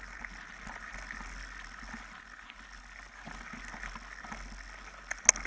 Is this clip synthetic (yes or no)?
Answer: no